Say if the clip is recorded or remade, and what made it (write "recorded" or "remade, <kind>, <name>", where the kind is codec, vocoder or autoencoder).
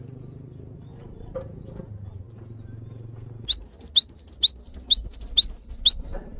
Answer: recorded